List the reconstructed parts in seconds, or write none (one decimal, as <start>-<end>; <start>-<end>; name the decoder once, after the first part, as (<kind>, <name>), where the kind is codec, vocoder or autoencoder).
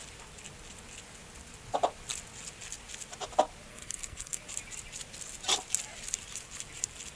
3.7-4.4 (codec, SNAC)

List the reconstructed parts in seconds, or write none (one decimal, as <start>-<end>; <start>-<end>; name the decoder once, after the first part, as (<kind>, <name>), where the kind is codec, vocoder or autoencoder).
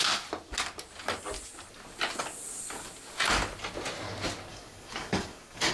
4.5-5.7 (codec, DAC)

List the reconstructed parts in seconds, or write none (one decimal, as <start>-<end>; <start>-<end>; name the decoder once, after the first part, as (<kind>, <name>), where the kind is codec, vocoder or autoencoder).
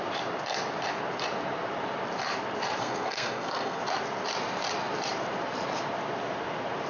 2.8-3.8 (codec, SNAC)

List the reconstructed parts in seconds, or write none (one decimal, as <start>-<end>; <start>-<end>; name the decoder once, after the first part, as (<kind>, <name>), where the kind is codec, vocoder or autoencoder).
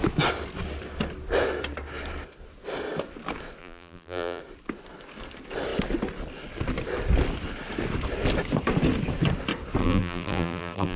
3.6-4.4 (vocoder, BigVGAN v2); 9.8-11.0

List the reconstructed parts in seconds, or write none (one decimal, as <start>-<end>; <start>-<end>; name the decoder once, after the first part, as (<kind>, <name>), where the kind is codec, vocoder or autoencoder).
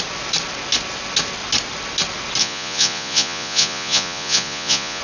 2.4-5.0 (vocoder, Vocos)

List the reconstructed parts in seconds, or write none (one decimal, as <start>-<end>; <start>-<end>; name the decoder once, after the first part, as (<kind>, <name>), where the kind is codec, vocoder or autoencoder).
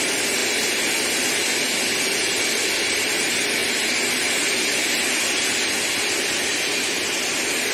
none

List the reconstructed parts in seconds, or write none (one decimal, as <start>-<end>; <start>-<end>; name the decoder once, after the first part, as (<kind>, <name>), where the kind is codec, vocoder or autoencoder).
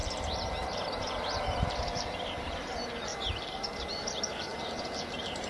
0.0-5.5 (vocoder, BigVGAN v2)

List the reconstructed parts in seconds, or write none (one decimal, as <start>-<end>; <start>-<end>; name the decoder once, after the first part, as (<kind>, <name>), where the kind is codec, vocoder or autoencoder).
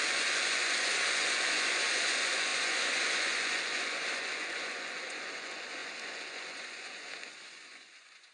0.0-8.3 (vocoder, Vocos)